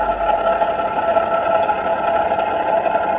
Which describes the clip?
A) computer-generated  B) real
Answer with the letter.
B